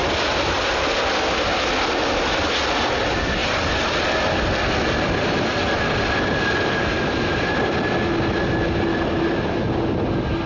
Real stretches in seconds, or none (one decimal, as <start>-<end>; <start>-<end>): 0.0-10.5

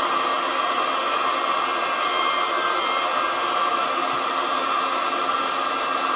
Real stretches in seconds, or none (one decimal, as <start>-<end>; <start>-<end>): 0.0-6.2

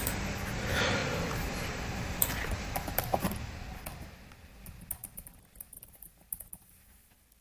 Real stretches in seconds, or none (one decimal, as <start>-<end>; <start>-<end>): 0.0-1.0; 3.8-7.4

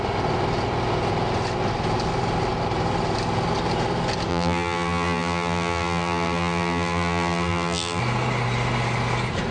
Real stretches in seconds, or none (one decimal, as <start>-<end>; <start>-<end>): 0.0-4.3; 8.0-9.5

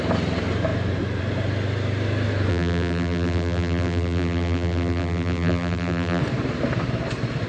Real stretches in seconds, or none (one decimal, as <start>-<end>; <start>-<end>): 0.0-2.5; 6.2-7.5

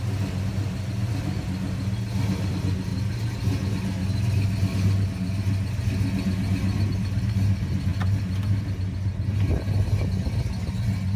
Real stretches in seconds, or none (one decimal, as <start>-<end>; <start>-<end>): 0.0-11.2